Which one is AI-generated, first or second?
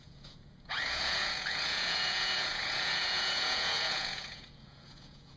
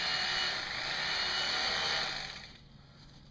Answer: first